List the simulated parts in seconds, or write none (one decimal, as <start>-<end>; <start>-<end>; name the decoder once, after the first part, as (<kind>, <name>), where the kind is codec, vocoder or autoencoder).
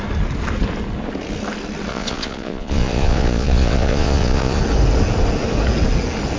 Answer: 1.9-4.6 (vocoder, Vocos)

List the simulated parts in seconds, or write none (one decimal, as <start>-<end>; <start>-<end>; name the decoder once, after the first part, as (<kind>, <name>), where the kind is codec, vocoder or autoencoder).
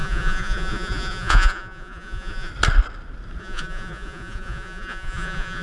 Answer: 0.0-2.5 (vocoder, Vocos); 3.4-5.6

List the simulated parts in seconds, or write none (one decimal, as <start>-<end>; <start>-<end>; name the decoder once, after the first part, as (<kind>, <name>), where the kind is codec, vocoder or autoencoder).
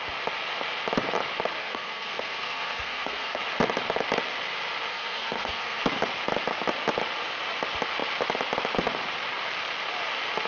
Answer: 1.6-3.4 (codec, SNAC); 4.9-5.8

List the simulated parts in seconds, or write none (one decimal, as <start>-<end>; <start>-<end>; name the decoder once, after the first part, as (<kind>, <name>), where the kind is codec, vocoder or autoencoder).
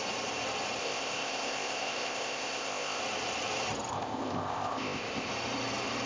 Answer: 0.8-3.0 (codec, ZipCodec); 3.9-5.3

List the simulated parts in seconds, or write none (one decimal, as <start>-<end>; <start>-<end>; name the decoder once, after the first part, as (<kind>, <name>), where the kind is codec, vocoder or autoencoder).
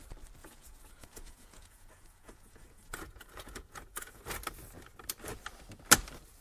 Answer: 0.4-4.2 (vocoder, Vocos)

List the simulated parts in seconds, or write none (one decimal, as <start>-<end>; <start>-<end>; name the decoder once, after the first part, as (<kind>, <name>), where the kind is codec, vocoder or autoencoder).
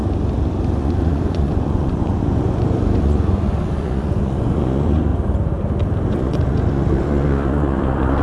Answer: 0.8-5.1 (vocoder, Vocos); 6.1-8.2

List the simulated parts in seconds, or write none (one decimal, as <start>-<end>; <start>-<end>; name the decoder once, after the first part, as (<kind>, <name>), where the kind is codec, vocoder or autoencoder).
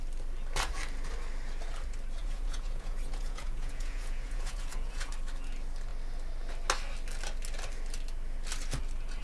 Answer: 2.2-5.1 (vocoder, Vocos)